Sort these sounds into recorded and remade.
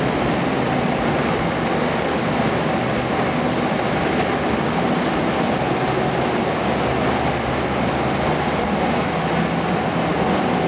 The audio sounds recorded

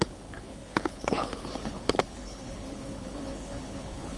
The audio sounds remade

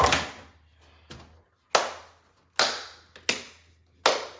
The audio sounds recorded